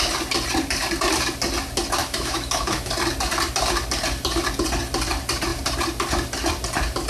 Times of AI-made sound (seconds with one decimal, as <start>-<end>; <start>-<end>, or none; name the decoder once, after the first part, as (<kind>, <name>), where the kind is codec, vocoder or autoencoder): 2.0-2.9 (autoencoder, DAC-VAE)